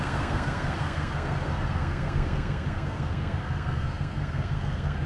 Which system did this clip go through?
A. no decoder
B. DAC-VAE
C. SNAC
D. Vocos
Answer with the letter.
C